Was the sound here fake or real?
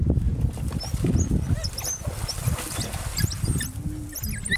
real